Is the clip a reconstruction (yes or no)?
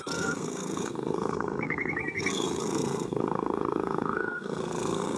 yes